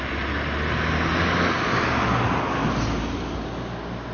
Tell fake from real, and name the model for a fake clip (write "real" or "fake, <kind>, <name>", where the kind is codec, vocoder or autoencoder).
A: real